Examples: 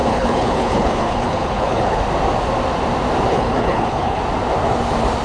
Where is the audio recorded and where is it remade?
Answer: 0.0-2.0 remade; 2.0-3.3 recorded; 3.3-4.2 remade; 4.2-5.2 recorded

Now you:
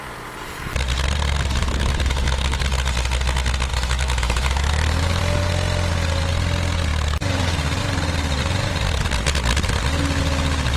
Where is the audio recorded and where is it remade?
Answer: 0.0-1.6 recorded; 1.6-2.6 remade; 2.6-3.7 recorded; 3.7-5.2 remade; 5.2-10.8 recorded